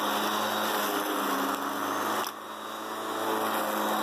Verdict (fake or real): real